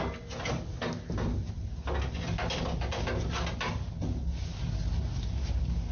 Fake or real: real